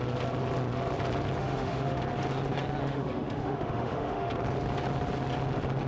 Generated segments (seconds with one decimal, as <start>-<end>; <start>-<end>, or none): 1.4-2.0; 2.8-4.3